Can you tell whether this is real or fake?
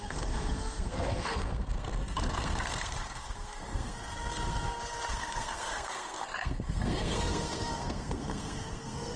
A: fake